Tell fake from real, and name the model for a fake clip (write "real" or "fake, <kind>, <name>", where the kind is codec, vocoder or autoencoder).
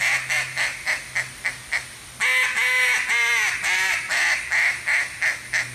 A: real